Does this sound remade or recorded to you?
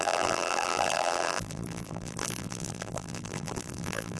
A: remade